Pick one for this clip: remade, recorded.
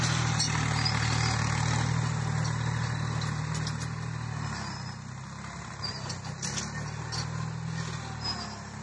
recorded